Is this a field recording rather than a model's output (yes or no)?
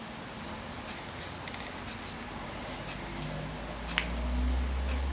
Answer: yes